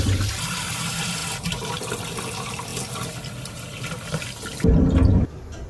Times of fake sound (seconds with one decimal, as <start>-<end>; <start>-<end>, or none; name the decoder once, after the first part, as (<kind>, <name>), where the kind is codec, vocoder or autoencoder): none